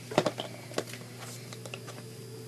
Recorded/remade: recorded